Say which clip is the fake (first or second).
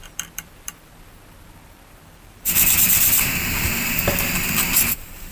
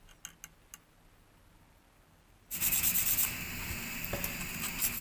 first